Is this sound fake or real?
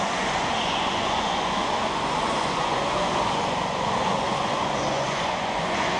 fake